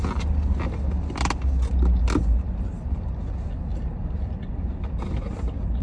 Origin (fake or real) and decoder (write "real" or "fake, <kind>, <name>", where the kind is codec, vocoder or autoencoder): real